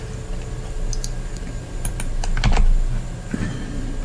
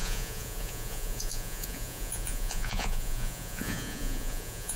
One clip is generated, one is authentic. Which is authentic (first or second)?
first